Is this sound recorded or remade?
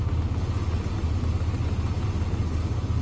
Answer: recorded